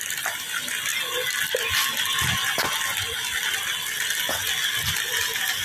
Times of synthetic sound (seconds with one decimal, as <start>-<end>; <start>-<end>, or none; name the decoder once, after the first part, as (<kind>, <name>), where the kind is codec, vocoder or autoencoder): none